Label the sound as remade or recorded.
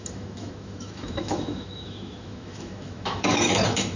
remade